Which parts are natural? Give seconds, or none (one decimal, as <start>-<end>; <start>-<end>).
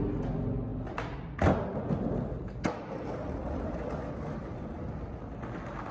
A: 0.0-5.9